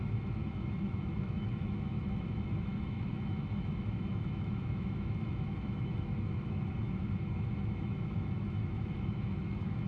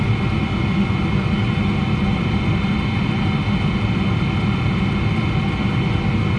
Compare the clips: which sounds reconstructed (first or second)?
first